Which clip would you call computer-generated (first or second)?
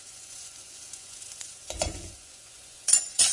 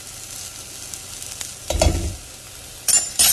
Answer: first